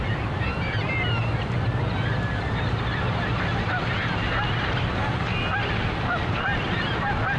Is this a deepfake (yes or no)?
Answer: yes